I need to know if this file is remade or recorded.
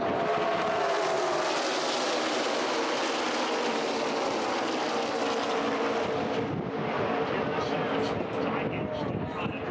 recorded